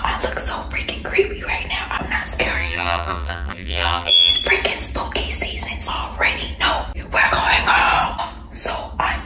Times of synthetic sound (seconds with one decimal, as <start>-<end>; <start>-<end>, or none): 2.6-4.3

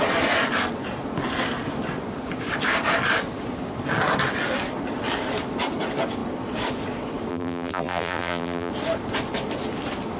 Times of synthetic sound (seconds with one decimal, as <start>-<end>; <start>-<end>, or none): 7.3-8.7